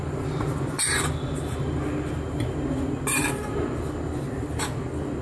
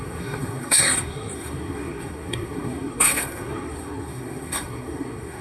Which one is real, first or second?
first